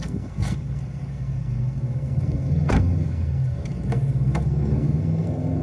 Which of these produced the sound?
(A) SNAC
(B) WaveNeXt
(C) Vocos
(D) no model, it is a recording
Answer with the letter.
A